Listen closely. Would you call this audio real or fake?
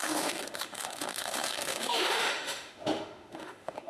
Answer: fake